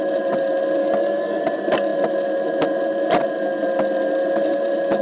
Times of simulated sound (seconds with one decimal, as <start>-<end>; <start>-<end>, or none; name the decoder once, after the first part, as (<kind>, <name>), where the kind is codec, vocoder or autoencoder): 0.8-1.4 (codec, DAC)